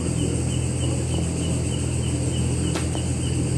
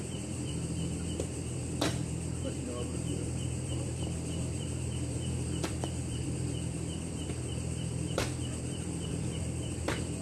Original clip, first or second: first